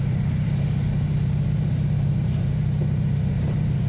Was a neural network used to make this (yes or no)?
yes